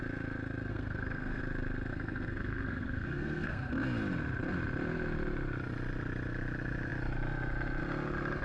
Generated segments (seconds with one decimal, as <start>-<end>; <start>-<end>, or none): 0.7-1.4; 1.9-3.7